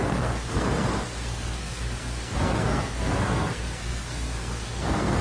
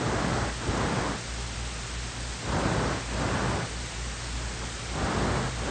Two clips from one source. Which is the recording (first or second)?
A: second